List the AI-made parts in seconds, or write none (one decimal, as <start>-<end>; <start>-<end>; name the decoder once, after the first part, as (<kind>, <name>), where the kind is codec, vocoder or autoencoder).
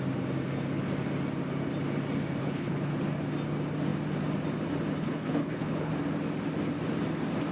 2.4-3.0 (codec, HILCodec); 5.0-5.9